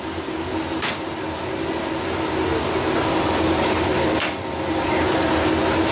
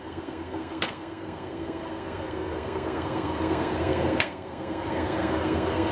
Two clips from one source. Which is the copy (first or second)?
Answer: second